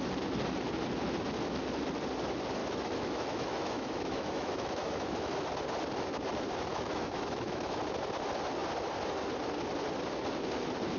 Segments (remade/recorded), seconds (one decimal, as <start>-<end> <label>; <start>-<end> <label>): 0.0-2.6 recorded; 2.6-5.4 remade; 5.4-6.7 recorded; 6.7-7.8 remade; 7.8-11.0 recorded